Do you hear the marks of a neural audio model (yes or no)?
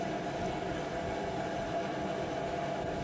no